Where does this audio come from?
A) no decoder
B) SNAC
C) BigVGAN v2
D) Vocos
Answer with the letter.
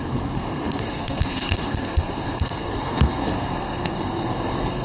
B